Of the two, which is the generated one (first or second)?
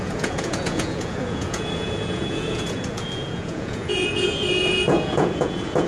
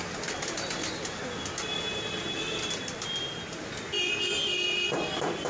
first